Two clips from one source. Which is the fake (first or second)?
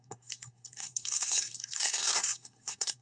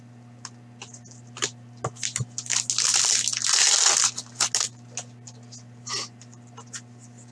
first